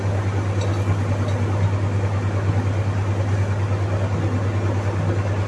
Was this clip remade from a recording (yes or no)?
no